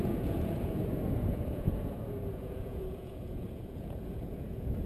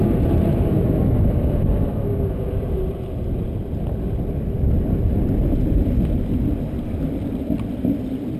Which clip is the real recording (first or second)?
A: second